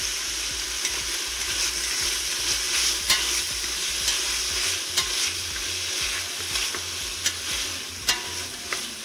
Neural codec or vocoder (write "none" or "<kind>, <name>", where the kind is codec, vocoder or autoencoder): none